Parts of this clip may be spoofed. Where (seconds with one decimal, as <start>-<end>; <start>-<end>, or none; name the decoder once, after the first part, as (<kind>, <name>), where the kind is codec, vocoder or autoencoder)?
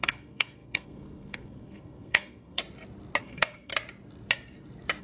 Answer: 0.0-2.6 (codec, SNAC); 3.2-3.7